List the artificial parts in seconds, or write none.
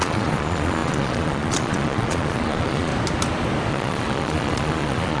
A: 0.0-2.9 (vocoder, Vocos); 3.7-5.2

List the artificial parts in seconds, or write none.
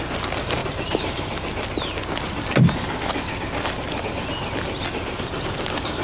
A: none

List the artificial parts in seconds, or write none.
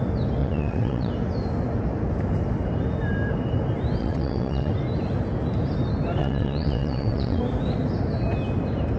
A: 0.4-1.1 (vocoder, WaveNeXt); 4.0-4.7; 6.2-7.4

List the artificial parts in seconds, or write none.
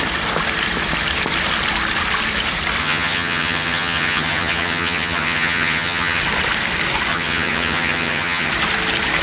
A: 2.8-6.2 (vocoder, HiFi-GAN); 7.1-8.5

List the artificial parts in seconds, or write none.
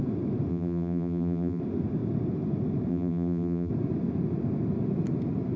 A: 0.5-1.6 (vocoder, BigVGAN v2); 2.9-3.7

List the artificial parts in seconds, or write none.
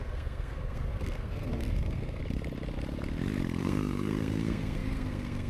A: 0.0-2.2 (codec, SNAC); 3.6-5.5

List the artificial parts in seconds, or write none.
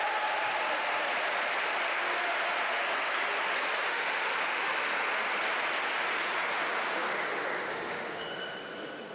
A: 3.9-4.9 (autoencoder, DAC-VAE); 7.7-8.3